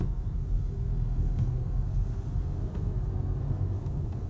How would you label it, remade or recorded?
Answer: remade